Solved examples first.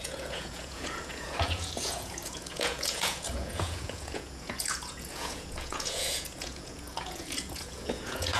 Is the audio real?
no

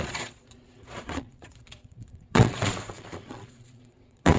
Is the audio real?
no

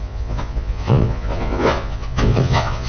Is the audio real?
no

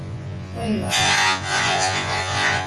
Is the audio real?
no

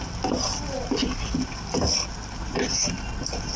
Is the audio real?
yes